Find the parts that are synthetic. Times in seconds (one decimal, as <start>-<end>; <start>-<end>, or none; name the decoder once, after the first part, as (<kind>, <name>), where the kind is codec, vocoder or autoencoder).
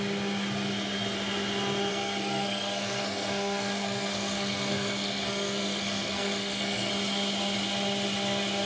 1.9-6.9 (codec, SNAC)